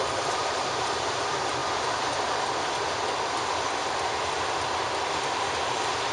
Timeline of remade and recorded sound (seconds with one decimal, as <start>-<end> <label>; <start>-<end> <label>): 0.0-1.6 remade; 1.6-5.3 recorded; 5.3-6.1 remade